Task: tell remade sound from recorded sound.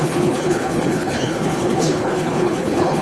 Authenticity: remade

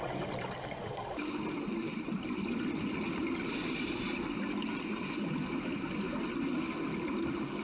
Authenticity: recorded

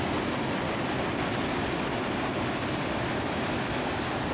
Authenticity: recorded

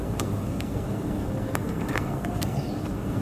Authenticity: remade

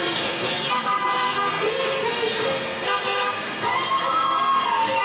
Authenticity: remade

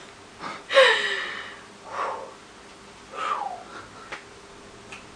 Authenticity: recorded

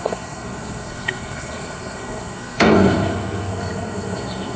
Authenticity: remade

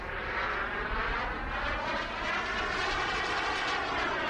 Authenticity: recorded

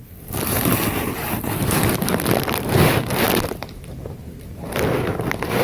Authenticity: recorded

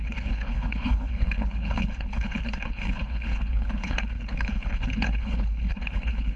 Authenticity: remade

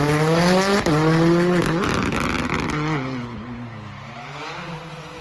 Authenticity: recorded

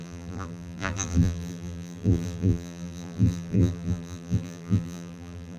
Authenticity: remade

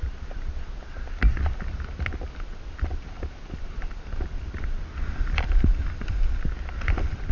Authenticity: recorded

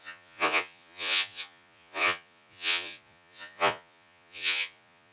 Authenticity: remade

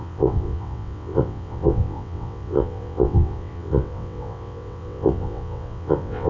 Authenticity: remade